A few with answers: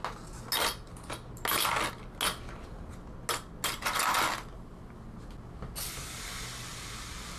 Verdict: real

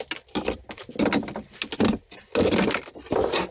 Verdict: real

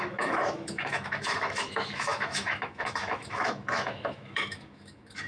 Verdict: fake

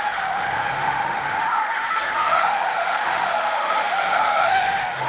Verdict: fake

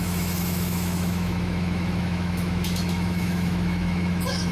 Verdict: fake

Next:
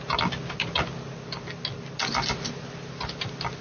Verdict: real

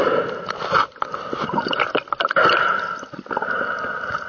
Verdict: real